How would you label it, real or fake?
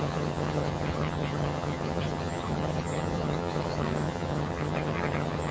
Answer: fake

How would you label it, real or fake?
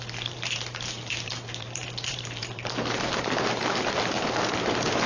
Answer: fake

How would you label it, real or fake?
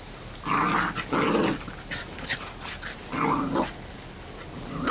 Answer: real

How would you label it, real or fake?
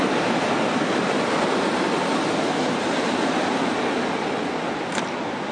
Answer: real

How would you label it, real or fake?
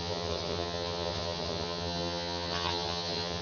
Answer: fake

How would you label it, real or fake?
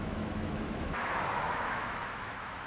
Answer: fake